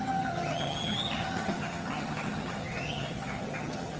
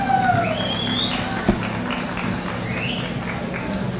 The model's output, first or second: first